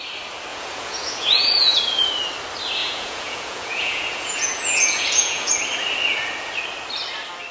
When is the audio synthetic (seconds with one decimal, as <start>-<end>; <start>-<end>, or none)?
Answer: 0.5-2.1; 2.8-5.5